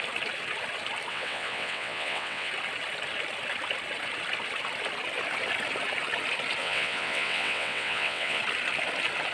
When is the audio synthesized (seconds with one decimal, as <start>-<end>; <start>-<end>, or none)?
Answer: 1.1-2.5; 6.6-8.4